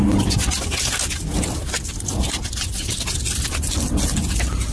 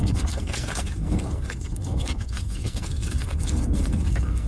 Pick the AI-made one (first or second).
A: second